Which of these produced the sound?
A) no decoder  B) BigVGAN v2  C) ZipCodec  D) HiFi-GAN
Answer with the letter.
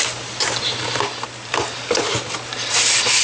A